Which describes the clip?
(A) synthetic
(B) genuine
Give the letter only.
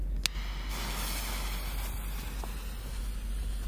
B